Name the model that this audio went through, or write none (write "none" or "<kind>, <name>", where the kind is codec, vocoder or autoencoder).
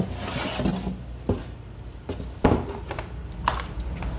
none